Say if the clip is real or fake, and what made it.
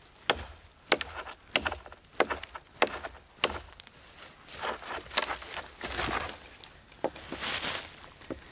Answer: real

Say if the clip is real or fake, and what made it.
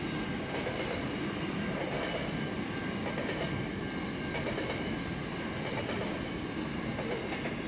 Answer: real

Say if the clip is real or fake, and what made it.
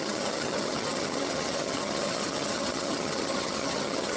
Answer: fake, vocoder, HiFi-GAN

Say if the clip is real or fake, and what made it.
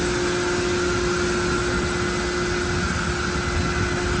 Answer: real